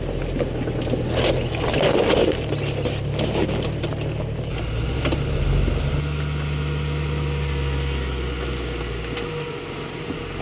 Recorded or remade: recorded